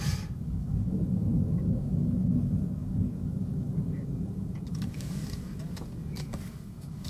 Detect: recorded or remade remade